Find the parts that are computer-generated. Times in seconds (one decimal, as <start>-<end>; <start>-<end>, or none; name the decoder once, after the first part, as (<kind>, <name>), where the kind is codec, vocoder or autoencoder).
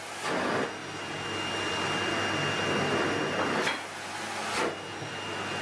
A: none